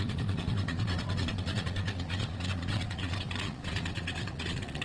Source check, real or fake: fake